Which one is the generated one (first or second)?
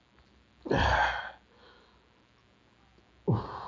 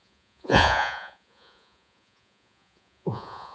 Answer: second